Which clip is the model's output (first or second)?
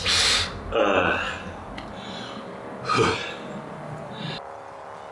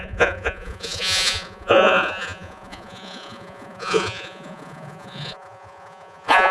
second